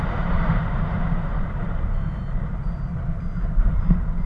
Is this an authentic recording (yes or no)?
no